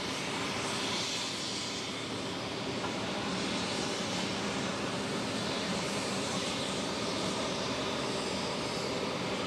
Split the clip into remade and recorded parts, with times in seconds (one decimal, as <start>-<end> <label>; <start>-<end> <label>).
0.0-5.4 recorded; 5.4-7.8 remade; 7.8-9.5 recorded